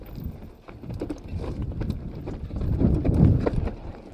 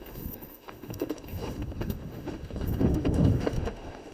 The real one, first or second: first